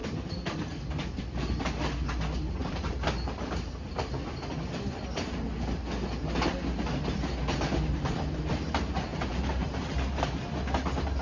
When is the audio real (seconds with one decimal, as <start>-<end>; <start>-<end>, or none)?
0.0-2.6; 4.1-9.1; 10.2-11.2